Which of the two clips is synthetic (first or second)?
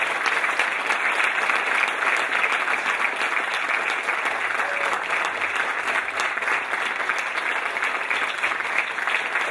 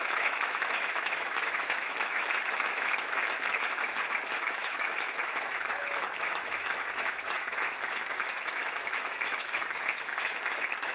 second